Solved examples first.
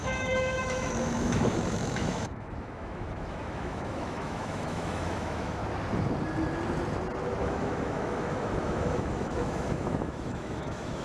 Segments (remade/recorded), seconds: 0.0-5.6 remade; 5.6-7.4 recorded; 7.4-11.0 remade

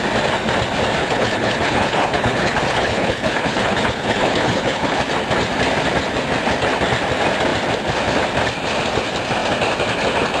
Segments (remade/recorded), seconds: 0.0-1.0 recorded; 1.0-5.0 remade; 5.0-10.4 recorded

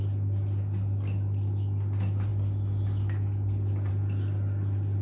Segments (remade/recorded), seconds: 0.0-5.0 recorded

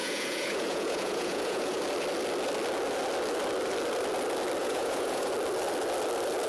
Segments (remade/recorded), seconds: 0.0-1.8 remade; 1.8-4.6 recorded; 4.6-5.3 remade; 5.3-6.5 recorded

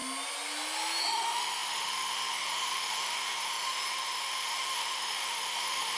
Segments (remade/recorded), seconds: 0.0-1.0 recorded; 1.0-6.0 remade